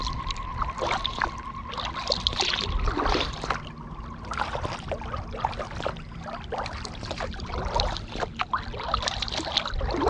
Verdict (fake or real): real